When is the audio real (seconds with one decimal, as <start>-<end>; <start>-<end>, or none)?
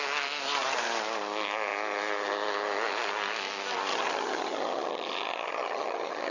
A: 0.0-3.9